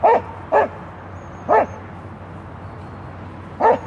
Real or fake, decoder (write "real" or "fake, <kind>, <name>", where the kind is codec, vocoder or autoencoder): real